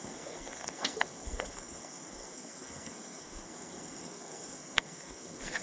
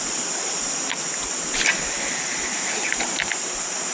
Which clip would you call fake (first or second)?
first